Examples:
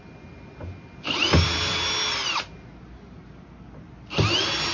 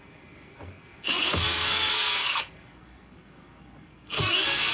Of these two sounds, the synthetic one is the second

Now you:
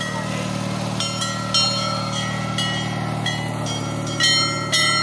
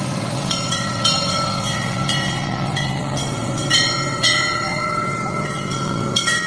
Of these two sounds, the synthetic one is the second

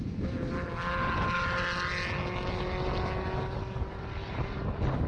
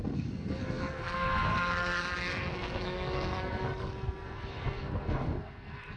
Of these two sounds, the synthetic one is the second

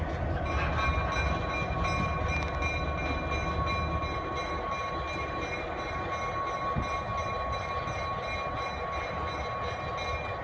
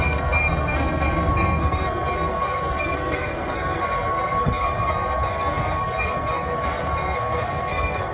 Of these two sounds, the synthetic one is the second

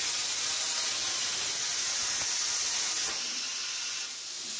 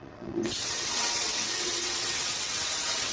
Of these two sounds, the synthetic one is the second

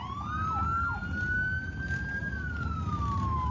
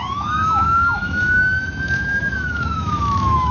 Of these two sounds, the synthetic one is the second